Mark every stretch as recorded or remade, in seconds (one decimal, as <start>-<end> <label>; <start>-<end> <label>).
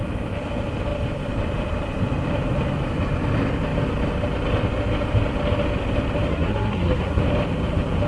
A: 0.0-6.3 recorded; 6.3-7.2 remade; 7.2-8.1 recorded